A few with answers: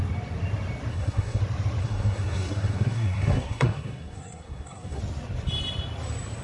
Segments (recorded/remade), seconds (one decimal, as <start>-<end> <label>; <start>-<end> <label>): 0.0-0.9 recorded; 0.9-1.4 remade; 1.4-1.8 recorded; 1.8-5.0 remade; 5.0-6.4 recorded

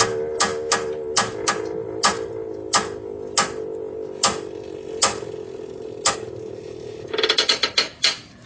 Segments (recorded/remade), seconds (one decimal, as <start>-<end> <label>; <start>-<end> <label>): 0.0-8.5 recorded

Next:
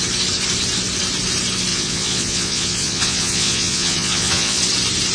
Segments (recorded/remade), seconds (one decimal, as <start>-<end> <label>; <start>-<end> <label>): 0.0-1.7 recorded; 1.7-4.6 remade; 4.6-5.1 recorded

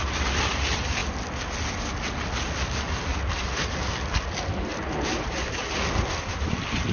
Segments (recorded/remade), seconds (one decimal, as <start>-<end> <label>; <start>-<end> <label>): 0.0-6.9 recorded

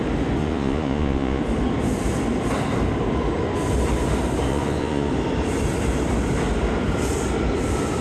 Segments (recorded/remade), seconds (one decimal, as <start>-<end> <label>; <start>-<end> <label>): 0.0-0.4 recorded; 0.4-1.4 remade; 1.4-4.5 recorded; 4.5-5.1 remade; 5.1-8.0 recorded

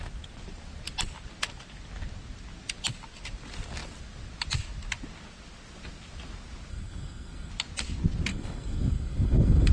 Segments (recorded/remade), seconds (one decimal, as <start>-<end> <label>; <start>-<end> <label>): 0.0-6.7 recorded; 6.7-7.5 remade; 7.5-8.3 recorded; 8.3-9.7 remade